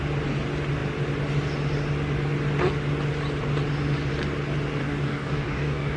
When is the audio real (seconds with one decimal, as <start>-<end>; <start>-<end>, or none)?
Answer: 0.0-4.8